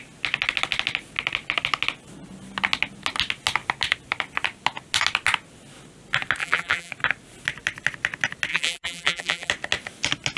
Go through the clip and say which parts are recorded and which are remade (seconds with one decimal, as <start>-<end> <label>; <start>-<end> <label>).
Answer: 0.0-6.4 recorded; 6.4-6.9 remade; 6.9-8.5 recorded; 8.5-9.5 remade; 9.5-10.4 recorded